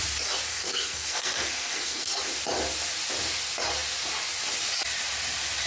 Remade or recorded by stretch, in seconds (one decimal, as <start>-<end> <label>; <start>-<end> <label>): 0.0-0.5 recorded; 0.5-2.2 remade; 2.2-5.7 recorded